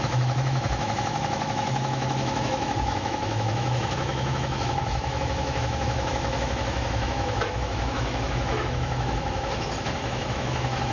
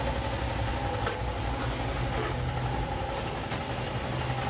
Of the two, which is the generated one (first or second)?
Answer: first